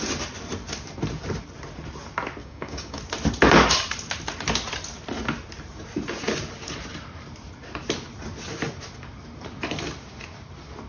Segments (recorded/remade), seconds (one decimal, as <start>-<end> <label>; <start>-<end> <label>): 0.0-2.4 recorded; 2.4-3.0 remade; 3.0-10.9 recorded